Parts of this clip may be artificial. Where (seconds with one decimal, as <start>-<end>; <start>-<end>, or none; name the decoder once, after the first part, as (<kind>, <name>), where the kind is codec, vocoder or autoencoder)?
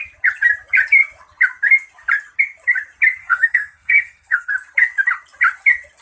3.2-4.5 (codec, SNAC)